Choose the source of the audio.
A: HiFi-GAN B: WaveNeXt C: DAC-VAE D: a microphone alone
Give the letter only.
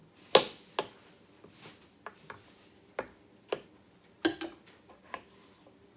D